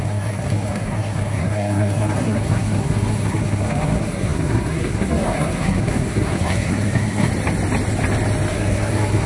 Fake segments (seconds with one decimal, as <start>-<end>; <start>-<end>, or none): 0.0-7.3; 8.5-9.3